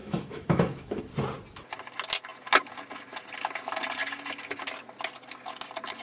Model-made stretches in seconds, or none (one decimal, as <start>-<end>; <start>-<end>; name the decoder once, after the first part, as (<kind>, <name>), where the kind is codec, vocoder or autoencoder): 0.0-1.0 (autoencoder, DAC-VAE)